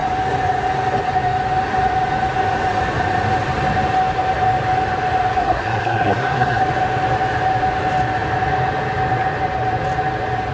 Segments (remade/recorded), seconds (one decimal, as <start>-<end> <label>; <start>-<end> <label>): 0.0-5.4 recorded; 5.4-6.6 remade; 6.6-10.5 recorded